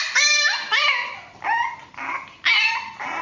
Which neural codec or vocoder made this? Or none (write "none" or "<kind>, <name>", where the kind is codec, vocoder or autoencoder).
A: none